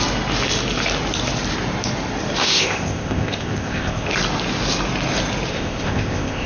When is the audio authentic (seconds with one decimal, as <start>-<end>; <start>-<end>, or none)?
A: 0.0-2.4; 4.1-5.5